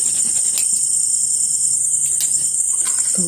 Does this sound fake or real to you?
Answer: real